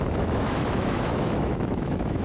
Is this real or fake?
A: fake